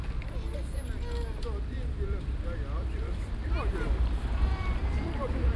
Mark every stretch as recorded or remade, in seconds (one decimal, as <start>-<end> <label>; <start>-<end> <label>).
0.0-3.4 recorded; 3.4-5.6 remade